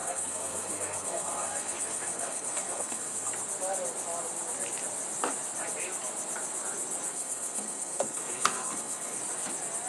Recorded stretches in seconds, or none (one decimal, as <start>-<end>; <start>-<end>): 3.3-7.1; 9.2-9.9